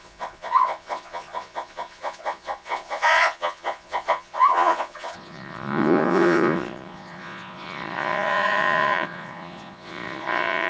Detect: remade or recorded remade